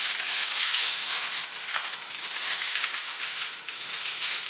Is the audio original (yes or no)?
no